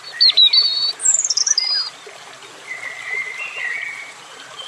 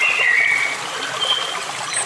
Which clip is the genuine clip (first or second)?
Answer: second